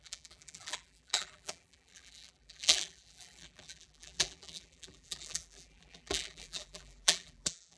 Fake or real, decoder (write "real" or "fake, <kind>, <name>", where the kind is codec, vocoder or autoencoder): fake, vocoder, BigVGAN v2